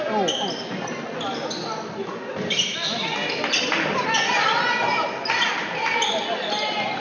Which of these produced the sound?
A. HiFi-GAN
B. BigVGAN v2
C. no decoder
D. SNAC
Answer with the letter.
C